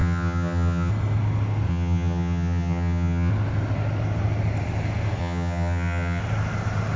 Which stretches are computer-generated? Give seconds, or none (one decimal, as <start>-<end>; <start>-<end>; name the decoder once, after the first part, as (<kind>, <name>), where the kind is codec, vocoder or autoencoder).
0.0-0.9 (vocoder, HiFi-GAN); 1.7-3.3; 5.2-6.2